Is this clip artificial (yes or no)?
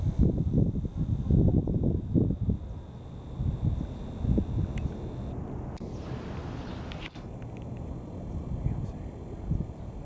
no